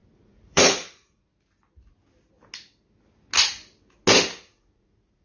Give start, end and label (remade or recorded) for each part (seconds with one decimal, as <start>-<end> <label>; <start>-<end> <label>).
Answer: 0.0-1.3 remade; 1.3-4.4 recorded; 4.4-5.2 remade